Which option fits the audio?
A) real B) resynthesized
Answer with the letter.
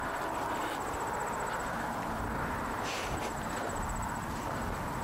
A